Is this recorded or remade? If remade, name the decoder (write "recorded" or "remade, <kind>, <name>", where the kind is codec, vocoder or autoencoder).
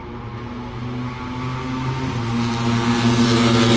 recorded